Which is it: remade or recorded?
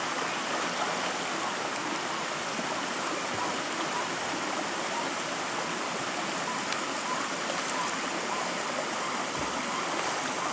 recorded